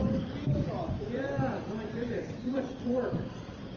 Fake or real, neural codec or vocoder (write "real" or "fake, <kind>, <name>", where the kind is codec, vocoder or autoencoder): fake, vocoder, BigVGAN v2